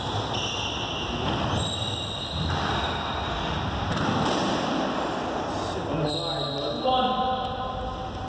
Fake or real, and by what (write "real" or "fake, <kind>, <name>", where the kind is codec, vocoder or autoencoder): real